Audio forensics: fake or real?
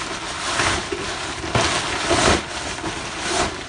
real